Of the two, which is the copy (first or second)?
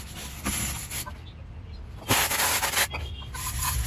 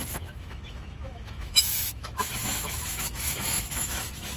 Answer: second